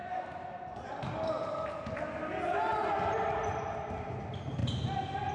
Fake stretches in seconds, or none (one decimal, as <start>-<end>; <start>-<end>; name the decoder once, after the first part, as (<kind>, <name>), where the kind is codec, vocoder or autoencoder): none

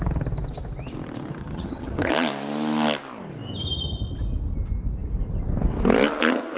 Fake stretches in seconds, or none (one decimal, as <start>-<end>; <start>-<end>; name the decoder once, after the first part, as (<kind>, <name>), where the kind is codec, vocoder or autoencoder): 1.4-2.1 (vocoder, HiFi-GAN)

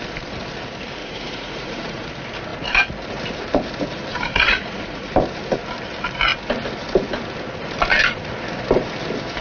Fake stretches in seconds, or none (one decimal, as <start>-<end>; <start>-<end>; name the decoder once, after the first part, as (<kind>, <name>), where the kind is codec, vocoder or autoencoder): 1.0-2.1 (vocoder, Vocos); 4.1-5.1

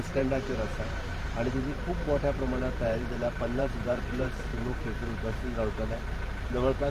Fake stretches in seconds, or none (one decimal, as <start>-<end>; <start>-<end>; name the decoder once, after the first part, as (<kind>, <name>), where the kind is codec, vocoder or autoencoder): 0.0-0.7 (vocoder, BigVGAN v2); 2.8-4.5

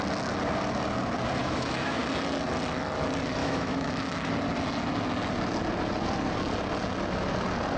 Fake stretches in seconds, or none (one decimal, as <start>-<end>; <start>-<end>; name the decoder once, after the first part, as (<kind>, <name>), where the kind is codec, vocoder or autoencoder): 1.4-2.0 (autoencoder, DAC-VAE); 3.4-4.3

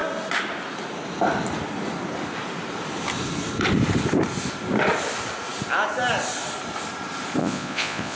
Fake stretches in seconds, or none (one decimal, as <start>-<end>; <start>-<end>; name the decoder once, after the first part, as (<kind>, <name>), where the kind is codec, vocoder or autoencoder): 7.4-8.2 (vocoder, Vocos)

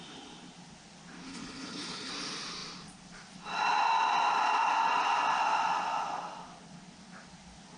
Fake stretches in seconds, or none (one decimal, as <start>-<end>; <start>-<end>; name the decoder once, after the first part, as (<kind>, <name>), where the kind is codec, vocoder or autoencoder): 1.3-2.1 (codec, HILCodec)

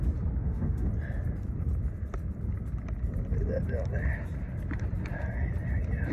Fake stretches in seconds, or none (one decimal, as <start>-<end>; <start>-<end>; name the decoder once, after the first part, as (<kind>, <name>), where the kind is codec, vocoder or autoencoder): 0.4-0.9 (autoencoder, DAC-VAE)